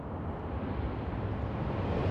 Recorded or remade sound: recorded